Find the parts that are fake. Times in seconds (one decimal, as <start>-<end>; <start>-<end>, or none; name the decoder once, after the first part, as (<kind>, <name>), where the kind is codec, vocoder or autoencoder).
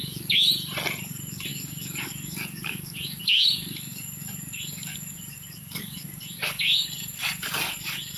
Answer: 0.0-0.5 (codec, DAC); 1.0-8.2